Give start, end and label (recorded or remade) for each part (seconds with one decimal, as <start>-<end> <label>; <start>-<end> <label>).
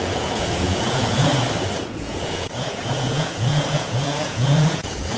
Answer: 0.0-1.3 remade; 1.3-1.8 recorded; 1.8-5.2 remade